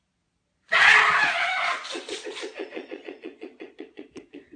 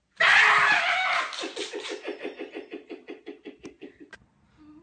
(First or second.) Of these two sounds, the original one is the second